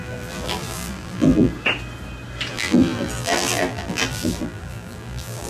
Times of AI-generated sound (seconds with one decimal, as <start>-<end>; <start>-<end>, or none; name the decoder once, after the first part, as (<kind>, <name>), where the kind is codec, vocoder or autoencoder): 0.0-1.5 (vocoder, BigVGAN v2); 2.5-5.5